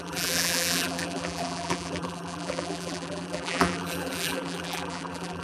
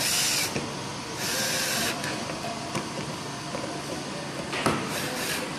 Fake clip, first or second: first